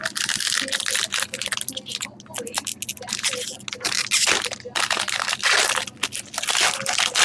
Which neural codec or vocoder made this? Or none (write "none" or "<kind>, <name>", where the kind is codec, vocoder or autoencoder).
none